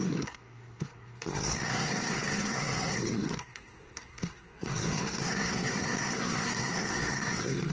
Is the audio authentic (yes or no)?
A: no